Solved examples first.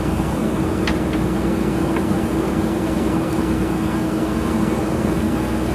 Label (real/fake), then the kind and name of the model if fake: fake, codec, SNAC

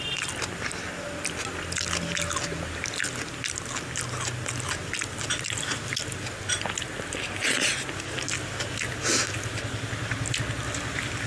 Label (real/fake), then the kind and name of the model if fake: real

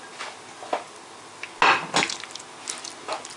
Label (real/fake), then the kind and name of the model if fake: real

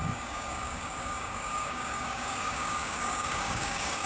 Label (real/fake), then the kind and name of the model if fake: fake, codec, DAC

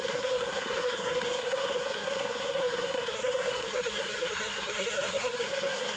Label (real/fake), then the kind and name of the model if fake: fake, codec, SNAC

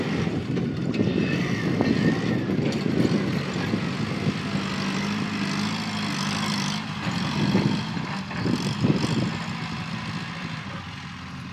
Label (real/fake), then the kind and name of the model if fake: real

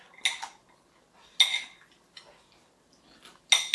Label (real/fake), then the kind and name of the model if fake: real